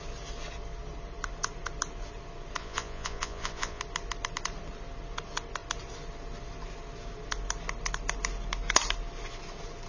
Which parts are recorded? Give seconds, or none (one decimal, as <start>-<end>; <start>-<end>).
0.0-2.6; 3.8-9.9